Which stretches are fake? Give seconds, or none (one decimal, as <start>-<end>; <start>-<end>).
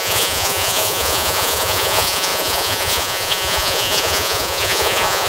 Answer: 0.0-5.3